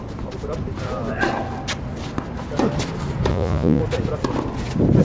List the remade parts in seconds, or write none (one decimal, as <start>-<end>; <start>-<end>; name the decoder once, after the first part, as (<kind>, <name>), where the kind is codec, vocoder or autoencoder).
3.3-3.8 (vocoder, Vocos)